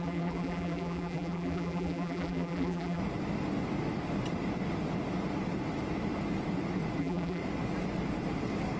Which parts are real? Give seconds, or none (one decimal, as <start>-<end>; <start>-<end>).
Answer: 3.0-7.0; 7.4-8.8

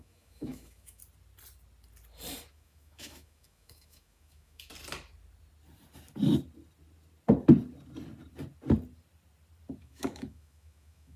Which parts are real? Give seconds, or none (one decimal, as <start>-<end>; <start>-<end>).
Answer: 1.0-2.5; 4.7-9.8

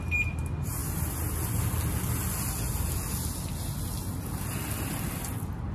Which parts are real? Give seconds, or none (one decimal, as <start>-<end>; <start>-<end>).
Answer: 0.0-5.7

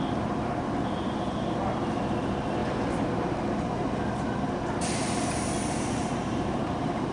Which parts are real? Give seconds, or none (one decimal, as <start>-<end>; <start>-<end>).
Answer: 0.0-6.3

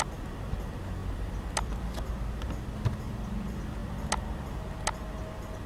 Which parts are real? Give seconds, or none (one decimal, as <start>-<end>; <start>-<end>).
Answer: 0.0-5.7